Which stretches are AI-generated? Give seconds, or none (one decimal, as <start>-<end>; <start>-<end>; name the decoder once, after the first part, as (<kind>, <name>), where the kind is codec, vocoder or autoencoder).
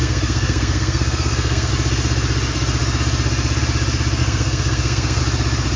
0.0-1.7 (codec, SNAC); 4.2-5.2